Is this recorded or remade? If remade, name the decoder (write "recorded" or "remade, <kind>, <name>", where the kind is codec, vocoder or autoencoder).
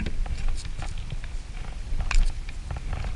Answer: recorded